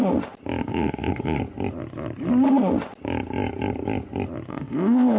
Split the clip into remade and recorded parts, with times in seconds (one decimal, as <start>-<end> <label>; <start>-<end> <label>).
0.0-0.6 recorded; 0.6-1.4 remade; 1.4-4.5 recorded; 4.5-5.2 remade